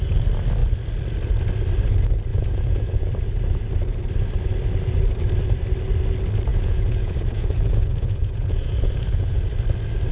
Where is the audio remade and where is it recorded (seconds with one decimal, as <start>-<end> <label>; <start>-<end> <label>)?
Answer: 0.0-2.3 recorded; 2.3-3.1 remade; 3.1-6.5 recorded; 6.5-9.4 remade; 9.4-10.1 recorded